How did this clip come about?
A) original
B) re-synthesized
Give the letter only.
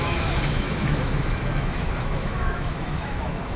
B